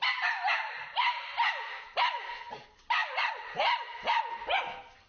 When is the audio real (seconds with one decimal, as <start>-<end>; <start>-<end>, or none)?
0.0-5.1